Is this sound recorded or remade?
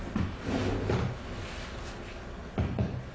recorded